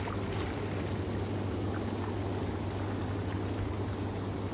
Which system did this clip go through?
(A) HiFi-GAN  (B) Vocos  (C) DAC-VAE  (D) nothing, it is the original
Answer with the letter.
D